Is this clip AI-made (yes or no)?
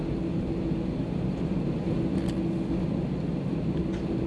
no